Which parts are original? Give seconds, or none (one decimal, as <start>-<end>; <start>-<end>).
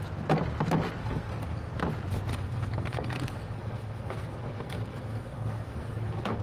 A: 0.0-1.0; 1.7-2.3